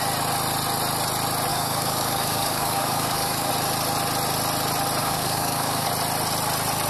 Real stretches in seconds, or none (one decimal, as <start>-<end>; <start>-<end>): 0.0-1.5; 3.5-5.0; 5.9-6.9